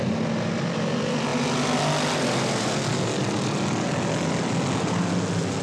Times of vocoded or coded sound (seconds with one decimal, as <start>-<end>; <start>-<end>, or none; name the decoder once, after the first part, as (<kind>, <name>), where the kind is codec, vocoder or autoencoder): none